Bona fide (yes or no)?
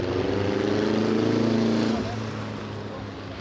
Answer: yes